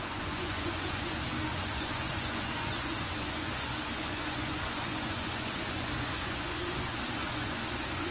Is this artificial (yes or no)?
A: yes